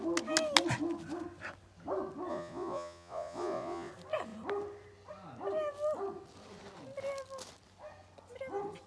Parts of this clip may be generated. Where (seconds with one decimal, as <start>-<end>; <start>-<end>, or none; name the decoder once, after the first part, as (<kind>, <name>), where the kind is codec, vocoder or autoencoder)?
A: 2.3-3.9 (vocoder, Vocos)